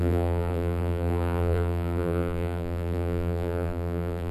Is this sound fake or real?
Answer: fake